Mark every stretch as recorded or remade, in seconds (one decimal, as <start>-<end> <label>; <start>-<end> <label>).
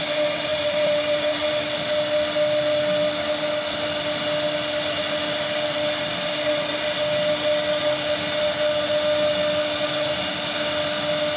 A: 0.0-0.5 recorded; 0.5-1.5 remade; 1.5-11.4 recorded